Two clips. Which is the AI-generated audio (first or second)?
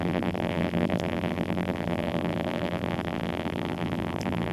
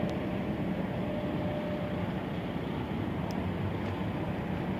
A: first